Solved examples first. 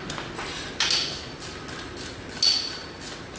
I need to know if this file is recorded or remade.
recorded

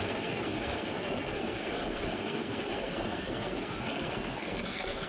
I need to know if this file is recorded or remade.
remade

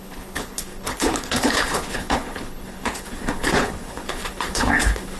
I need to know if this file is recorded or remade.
remade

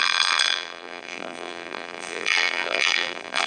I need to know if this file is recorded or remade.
remade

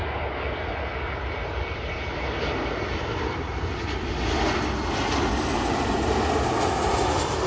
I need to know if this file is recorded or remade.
recorded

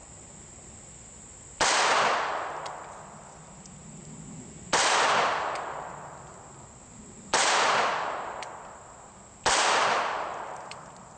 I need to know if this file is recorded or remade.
recorded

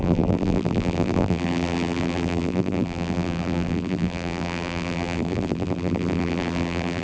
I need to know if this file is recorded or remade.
remade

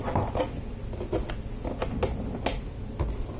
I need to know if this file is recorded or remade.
recorded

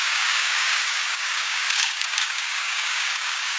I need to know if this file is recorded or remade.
remade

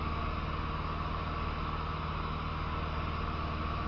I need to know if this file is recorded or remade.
recorded